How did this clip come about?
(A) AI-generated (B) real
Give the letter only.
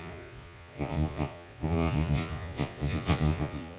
A